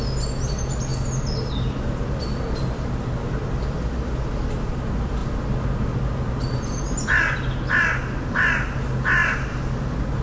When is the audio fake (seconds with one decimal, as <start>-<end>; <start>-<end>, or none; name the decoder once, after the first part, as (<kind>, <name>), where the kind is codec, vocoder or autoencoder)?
none